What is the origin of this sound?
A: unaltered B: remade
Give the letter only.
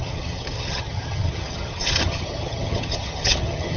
B